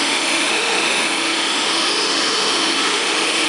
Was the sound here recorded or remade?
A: remade